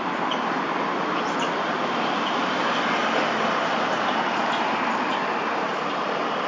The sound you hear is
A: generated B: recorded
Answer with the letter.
B